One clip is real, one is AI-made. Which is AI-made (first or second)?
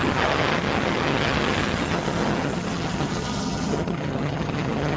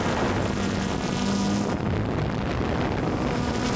first